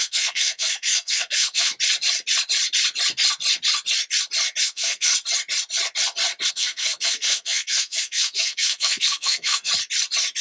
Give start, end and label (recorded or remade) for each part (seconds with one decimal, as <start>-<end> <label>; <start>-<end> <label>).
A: 0.0-1.7 remade; 1.7-4.6 recorded; 4.6-5.1 remade; 5.1-6.5 recorded; 6.5-9.7 remade; 9.7-10.4 recorded